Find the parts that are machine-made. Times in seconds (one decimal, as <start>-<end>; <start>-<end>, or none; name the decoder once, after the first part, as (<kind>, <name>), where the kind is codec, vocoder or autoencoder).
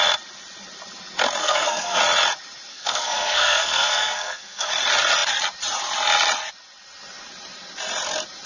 1.4-2.0 (codec, SNAC); 2.7-4.7